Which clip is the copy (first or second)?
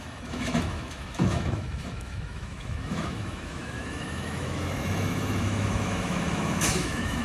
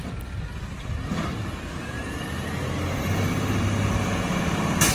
first